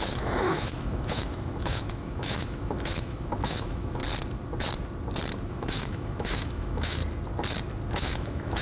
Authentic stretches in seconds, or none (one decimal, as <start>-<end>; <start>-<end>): 4.0-5.5; 7.0-7.9